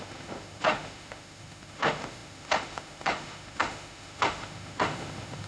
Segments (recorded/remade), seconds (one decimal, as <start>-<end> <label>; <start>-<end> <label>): 0.0-5.5 remade